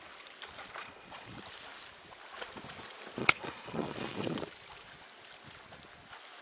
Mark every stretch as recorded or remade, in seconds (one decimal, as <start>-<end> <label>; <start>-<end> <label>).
0.0-0.8 recorded; 0.8-1.3 remade; 1.3-3.2 recorded; 3.2-4.4 remade; 4.4-6.4 recorded

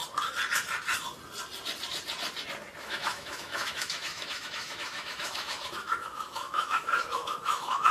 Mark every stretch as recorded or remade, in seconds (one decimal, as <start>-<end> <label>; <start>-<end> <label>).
0.0-2.8 recorded; 2.8-7.9 remade